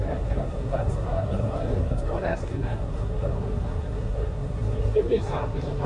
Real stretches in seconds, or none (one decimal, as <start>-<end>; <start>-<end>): none